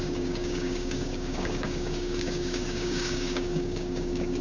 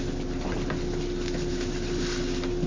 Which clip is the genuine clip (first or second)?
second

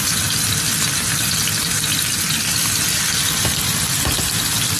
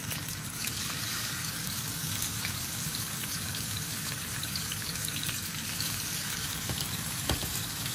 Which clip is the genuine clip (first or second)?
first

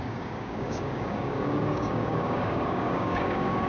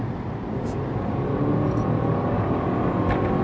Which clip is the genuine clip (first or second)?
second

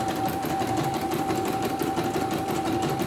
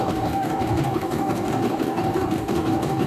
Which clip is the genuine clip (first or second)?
first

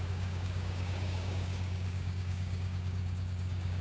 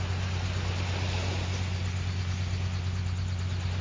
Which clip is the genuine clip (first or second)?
second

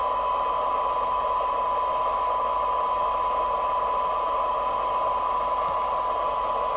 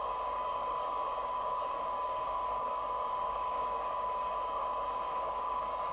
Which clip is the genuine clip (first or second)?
first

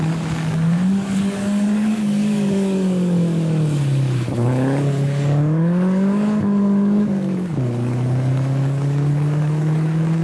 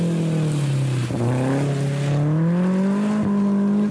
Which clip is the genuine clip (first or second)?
second